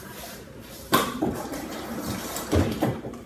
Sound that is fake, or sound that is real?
fake